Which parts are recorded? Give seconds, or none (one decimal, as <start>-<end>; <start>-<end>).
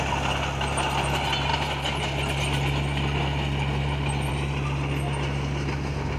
0.0-6.2